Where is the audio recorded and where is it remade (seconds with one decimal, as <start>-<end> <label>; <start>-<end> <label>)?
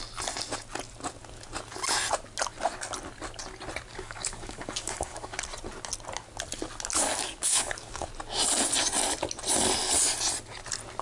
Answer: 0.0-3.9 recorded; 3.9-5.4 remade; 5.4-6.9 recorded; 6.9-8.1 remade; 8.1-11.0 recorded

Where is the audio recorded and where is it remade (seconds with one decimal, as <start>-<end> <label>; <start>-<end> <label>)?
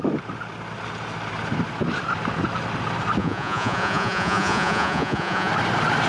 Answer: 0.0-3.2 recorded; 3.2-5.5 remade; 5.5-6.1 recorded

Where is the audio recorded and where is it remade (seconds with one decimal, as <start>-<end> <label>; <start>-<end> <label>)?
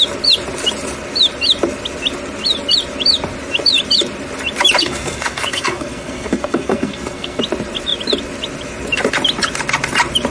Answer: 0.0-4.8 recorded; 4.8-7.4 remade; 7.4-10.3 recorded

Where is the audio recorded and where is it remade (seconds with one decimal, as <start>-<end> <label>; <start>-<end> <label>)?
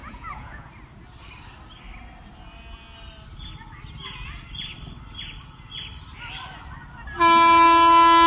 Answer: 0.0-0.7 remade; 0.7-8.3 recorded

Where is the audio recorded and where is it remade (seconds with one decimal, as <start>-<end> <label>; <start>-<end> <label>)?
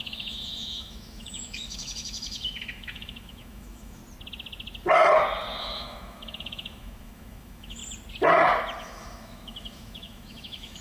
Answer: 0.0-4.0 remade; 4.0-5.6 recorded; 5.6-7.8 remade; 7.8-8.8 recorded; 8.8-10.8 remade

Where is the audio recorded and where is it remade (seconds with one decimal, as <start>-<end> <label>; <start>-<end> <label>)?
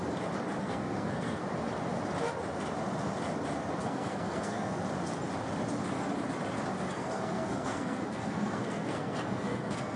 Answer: 0.0-0.6 recorded; 0.6-1.4 remade; 1.4-3.8 recorded; 3.8-4.8 remade; 4.8-6.9 recorded; 6.9-10.0 remade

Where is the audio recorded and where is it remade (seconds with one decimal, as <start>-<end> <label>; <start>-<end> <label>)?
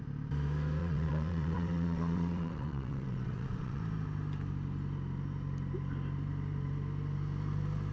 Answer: 0.0-0.8 recorded; 0.8-3.8 remade; 3.8-7.9 recorded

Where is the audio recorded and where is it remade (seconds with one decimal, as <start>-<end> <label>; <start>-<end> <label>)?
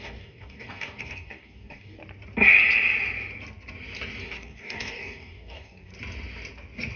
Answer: 0.0-2.0 remade; 2.0-4.2 recorded; 4.2-5.9 remade; 5.9-7.0 recorded